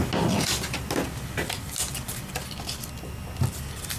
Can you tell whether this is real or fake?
real